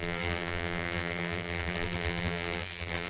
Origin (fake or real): fake